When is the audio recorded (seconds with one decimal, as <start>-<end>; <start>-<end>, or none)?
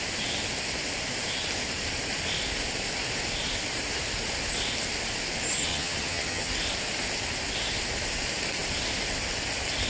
0.0-5.7; 6.5-9.9